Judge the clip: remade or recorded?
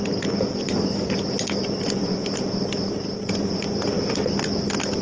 recorded